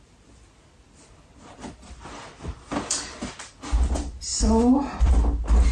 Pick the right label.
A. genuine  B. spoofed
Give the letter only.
A